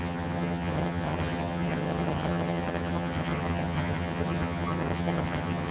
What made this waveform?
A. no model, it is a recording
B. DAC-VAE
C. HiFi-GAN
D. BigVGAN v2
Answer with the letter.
C